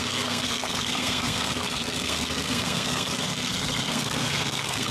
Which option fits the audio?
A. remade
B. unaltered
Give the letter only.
A